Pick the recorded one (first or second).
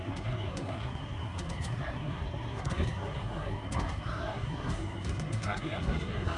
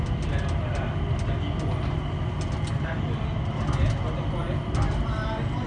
second